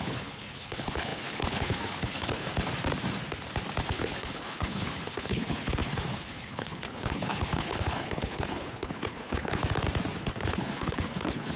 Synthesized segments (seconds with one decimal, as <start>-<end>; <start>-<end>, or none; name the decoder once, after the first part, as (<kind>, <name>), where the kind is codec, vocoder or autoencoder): 0.0-2.5 (codec, HILCodec); 3.8-9.6; 10.2-11.6